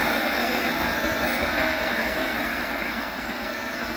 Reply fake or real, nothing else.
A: fake